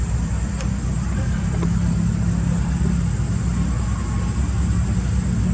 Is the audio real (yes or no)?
yes